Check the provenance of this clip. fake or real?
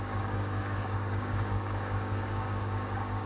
fake